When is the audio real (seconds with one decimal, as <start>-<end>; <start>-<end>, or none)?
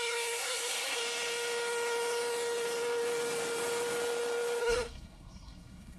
1.0-4.6